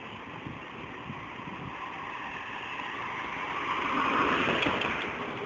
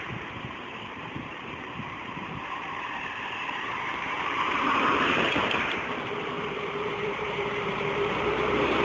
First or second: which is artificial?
second